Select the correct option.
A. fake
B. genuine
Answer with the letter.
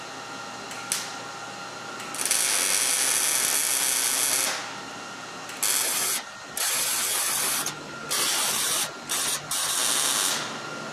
B